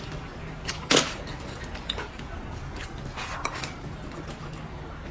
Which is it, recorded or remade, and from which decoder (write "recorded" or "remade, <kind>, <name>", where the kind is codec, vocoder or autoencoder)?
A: recorded